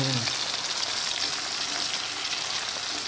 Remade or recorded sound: recorded